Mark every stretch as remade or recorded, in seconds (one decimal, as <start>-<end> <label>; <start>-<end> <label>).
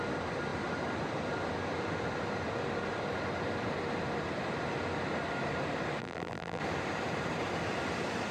0.0-6.0 recorded; 6.0-6.6 remade; 6.6-8.3 recorded